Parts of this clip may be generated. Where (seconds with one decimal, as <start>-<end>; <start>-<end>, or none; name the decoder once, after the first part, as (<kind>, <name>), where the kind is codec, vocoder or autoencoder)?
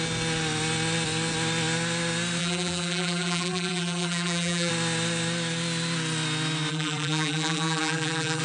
2.4-4.7 (vocoder, BigVGAN v2); 6.7-8.4